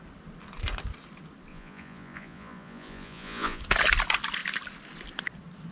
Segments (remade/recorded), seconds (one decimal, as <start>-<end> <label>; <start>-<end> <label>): 0.0-1.5 recorded; 1.5-3.6 remade; 3.6-5.7 recorded